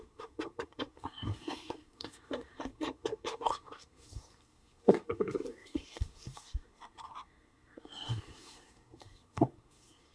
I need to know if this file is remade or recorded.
remade